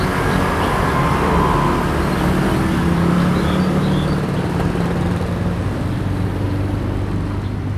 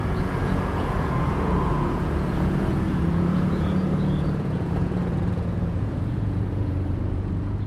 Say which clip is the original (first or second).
first